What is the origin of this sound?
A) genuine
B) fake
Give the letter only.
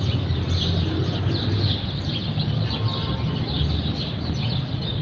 B